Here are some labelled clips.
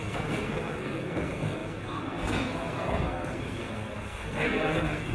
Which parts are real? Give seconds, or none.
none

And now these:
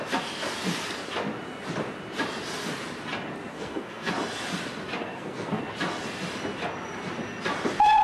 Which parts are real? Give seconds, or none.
0.0-3.5; 4.1-5.0; 5.6-8.0

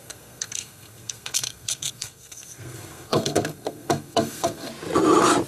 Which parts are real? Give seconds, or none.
4.7-5.5

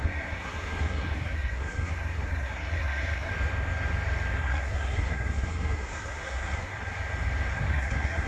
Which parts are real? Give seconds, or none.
3.3-4.4; 6.7-7.5